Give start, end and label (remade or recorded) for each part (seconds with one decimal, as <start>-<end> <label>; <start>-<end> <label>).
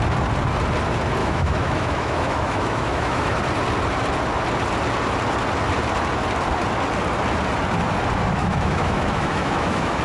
0.0-1.2 recorded; 1.2-3.4 remade; 3.4-8.4 recorded; 8.4-10.0 remade